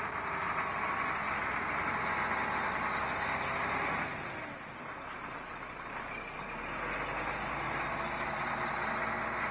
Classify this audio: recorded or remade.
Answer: recorded